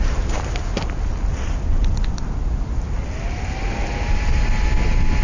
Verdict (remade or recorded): recorded